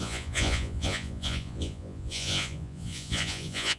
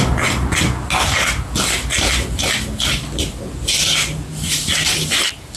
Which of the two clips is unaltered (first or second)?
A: second